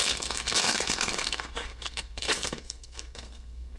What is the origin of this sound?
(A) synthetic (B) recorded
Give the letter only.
A